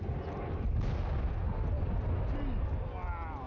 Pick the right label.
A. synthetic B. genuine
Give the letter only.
B